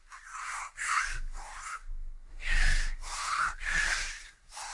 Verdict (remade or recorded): remade